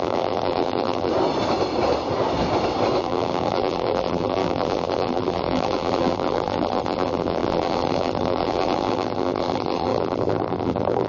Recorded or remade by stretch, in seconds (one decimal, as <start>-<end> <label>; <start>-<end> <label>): 0.0-1.1 remade; 1.1-3.0 recorded; 3.0-11.1 remade

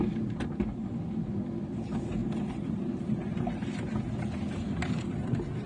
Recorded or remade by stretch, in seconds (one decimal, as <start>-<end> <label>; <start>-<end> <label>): 0.0-2.2 recorded; 2.2-2.8 remade; 2.8-5.7 recorded

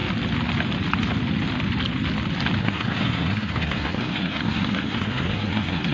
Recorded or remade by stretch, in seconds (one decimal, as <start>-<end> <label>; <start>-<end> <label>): 0.0-2.6 recorded; 2.6-5.9 remade

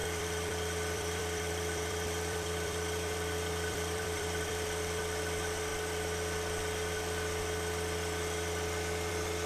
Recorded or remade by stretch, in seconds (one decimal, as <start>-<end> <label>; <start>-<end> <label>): 0.0-5.0 remade; 5.0-9.5 recorded

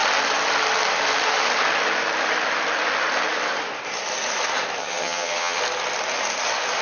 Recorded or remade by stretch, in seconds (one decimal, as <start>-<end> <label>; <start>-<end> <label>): 0.0-4.8 recorded; 4.8-5.6 remade; 5.6-6.8 recorded

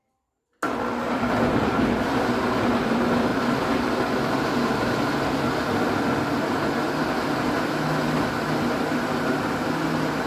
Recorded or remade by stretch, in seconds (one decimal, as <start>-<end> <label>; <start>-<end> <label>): 0.0-10.3 recorded

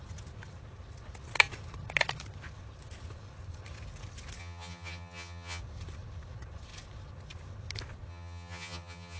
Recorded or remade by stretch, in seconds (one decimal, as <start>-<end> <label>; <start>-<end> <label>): 0.0-4.4 recorded; 4.4-5.6 remade; 5.6-8.1 recorded; 8.1-9.2 remade

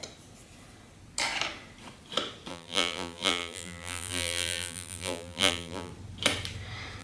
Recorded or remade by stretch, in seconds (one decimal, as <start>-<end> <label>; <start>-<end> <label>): 0.0-2.5 recorded; 2.5-5.9 remade; 5.9-7.0 recorded